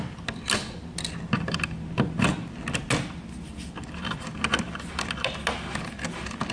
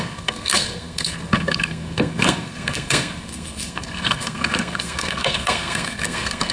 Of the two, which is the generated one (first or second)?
second